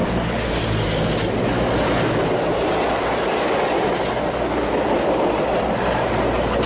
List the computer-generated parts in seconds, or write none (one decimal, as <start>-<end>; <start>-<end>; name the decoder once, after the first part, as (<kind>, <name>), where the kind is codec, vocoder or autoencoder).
0.0-1.0 (vocoder, BigVGAN v2)